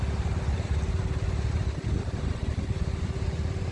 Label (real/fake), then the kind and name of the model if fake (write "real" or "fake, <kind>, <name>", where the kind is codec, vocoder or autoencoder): real